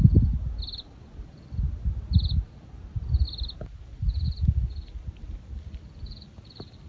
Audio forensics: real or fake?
real